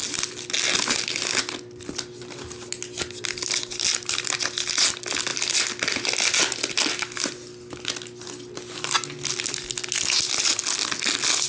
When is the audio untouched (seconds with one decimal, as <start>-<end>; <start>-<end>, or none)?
0.0-11.5